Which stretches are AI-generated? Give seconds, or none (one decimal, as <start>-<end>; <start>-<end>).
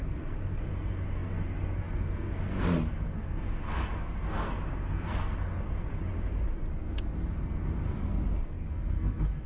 0.0-5.9; 6.7-9.5